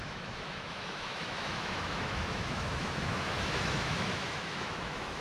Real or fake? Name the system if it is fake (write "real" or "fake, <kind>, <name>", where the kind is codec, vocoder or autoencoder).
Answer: fake, autoencoder, DAC-VAE